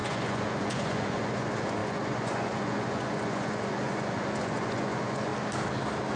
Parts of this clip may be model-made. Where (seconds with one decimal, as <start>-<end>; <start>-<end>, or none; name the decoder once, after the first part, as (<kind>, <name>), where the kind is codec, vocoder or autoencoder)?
0.0-5.3 (vocoder, Vocos)